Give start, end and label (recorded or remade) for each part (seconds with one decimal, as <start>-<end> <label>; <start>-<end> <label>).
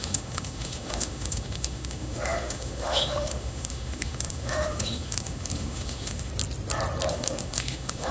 0.0-6.3 remade; 6.3-7.1 recorded; 7.1-8.1 remade